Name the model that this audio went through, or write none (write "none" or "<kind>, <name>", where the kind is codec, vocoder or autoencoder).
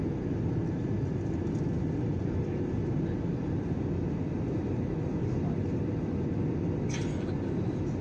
none